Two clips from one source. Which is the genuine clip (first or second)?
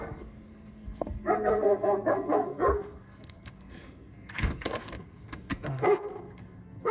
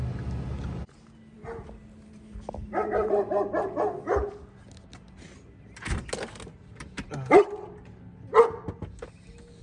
second